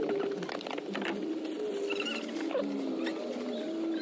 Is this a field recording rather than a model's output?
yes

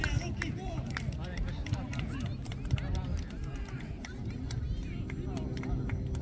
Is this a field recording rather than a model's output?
yes